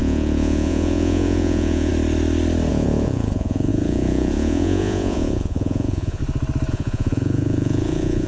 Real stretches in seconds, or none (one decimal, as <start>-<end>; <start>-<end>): 1.9-2.7; 6.2-6.7